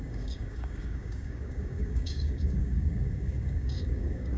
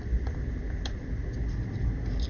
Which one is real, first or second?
second